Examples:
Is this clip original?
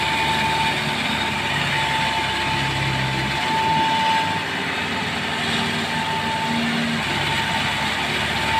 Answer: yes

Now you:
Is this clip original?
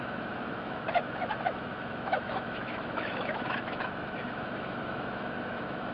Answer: no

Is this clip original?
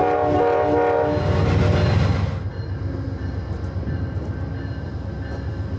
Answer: yes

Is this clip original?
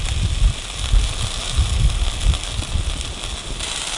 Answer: yes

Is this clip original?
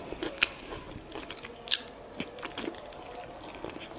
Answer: yes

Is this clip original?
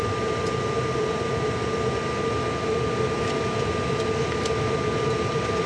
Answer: yes